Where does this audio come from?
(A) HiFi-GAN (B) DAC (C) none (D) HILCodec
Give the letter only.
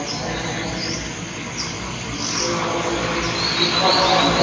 C